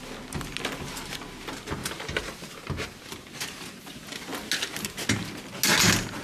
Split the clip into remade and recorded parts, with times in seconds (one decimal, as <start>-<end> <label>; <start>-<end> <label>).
0.0-1.8 recorded; 1.8-3.0 remade; 3.0-6.2 recorded